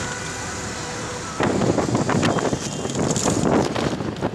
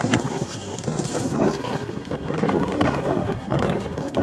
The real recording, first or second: first